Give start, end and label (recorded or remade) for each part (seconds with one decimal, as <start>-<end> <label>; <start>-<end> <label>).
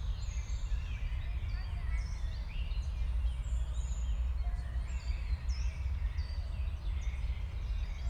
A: 0.0-8.1 recorded